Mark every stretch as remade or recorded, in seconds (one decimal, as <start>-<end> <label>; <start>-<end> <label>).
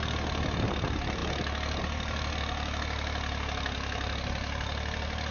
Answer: 0.0-5.3 recorded